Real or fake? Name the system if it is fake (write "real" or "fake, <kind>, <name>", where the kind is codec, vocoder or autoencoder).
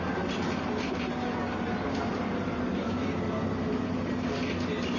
real